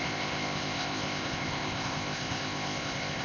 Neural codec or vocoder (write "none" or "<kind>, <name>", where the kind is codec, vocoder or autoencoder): codec, ZipCodec